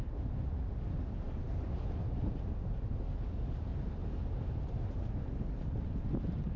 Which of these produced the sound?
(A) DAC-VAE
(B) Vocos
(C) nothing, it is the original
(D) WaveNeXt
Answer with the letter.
C